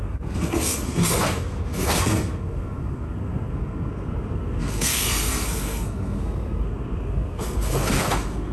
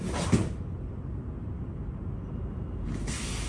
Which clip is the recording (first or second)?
second